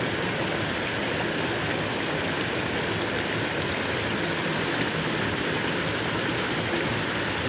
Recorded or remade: recorded